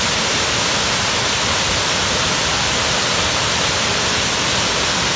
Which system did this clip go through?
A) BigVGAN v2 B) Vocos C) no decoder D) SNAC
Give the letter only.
C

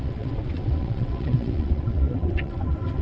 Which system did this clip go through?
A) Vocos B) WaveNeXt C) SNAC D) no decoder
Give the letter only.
B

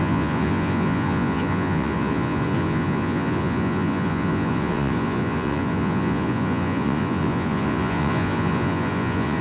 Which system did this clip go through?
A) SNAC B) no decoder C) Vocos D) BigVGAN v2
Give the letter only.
C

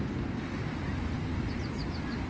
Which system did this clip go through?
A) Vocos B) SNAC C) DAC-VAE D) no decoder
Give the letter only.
D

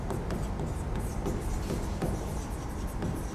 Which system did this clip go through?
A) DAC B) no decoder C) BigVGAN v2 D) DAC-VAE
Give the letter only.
B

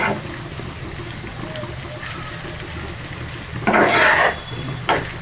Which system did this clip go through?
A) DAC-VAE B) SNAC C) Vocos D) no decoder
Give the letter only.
D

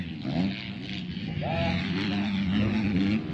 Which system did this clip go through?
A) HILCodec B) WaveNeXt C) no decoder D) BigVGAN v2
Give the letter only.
C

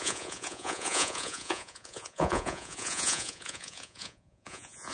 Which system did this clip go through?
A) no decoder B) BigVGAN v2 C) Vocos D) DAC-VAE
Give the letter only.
C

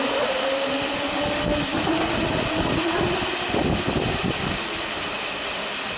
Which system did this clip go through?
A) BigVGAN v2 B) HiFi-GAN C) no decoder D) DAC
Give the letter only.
C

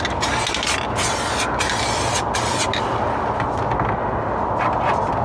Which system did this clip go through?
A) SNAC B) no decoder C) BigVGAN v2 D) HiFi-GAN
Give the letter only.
B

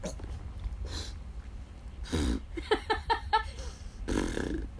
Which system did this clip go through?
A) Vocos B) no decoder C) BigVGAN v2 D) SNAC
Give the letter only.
C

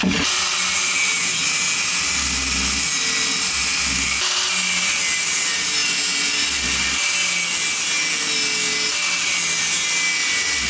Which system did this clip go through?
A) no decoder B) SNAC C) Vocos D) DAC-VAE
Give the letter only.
A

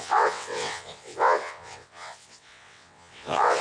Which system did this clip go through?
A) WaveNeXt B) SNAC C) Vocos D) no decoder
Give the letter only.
A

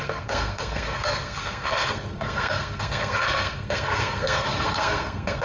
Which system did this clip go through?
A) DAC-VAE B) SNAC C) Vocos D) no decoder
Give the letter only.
B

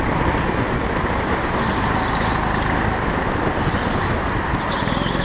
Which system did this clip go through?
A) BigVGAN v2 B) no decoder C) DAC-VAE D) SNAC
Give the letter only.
B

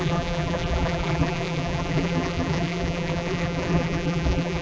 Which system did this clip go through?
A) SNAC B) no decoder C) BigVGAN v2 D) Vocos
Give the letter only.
C